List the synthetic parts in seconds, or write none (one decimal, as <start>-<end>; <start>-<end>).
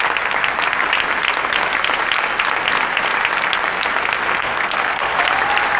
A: 4.4-5.2